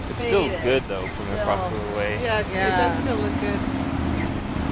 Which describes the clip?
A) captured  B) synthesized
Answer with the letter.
A